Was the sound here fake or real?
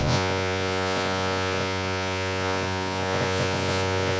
fake